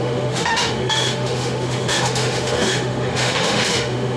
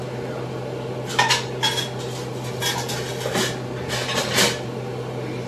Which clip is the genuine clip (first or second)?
second